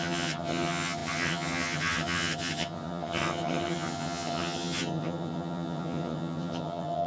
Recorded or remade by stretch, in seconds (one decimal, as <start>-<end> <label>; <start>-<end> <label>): 0.0-7.1 remade